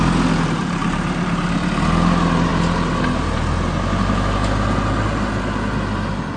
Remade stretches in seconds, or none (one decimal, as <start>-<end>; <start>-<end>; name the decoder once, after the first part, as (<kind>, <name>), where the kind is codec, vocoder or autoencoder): 0.6-1.6 (vocoder, BigVGAN v2)